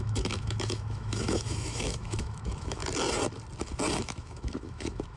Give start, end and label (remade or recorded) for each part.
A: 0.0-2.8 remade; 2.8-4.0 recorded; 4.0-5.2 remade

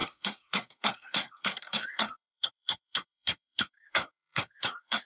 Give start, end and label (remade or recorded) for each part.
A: 0.0-5.1 remade

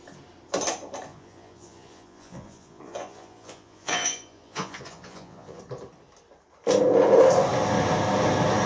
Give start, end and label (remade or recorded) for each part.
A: 0.0-1.1 recorded; 1.1-5.6 remade; 5.6-8.7 recorded

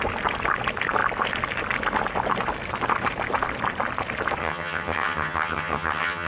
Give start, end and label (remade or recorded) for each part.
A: 0.0-4.4 recorded; 4.4-6.3 remade

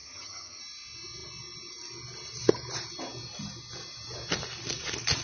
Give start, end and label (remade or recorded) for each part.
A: 0.0-0.6 remade; 0.6-5.2 recorded